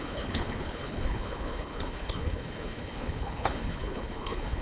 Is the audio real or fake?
fake